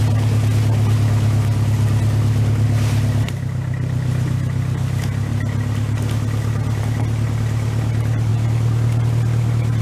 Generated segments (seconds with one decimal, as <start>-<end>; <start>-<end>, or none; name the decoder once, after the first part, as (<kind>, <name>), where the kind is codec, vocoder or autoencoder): none